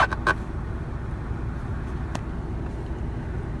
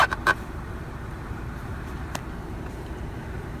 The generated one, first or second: second